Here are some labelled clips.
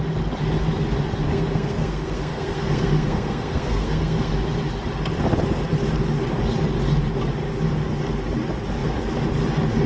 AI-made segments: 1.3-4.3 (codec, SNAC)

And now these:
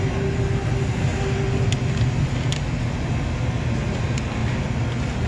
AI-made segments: none

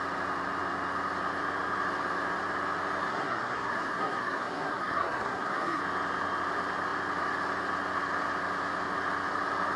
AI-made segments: 3.1-5.8 (codec, SNAC)

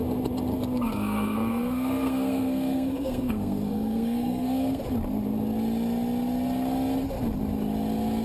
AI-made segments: 0.5-4.8 (codec, SNAC)

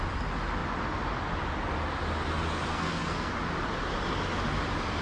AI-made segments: 2.7-3.3 (codec, SNAC)